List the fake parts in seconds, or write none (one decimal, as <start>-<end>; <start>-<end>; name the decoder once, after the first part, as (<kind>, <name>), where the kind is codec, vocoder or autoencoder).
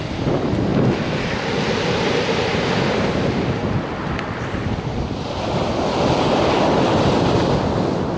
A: none